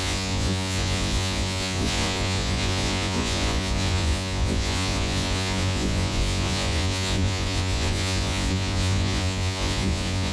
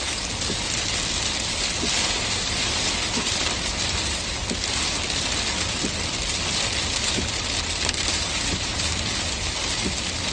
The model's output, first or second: first